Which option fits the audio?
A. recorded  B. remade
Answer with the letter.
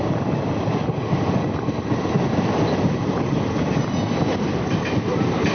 A